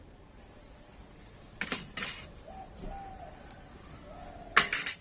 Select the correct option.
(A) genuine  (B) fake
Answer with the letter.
A